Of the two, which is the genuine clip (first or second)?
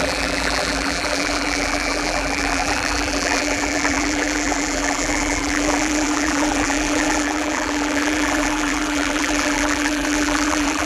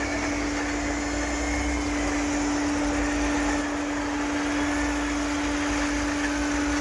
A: second